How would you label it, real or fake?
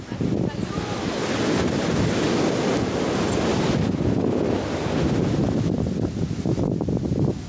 real